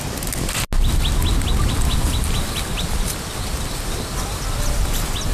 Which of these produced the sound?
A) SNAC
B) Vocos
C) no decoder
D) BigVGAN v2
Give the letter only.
C